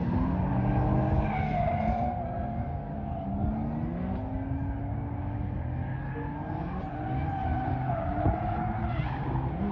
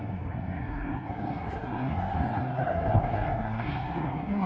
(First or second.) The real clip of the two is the first